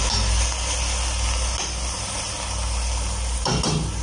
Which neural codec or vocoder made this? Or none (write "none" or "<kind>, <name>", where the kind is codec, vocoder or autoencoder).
none